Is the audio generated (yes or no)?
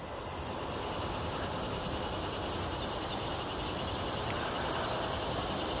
no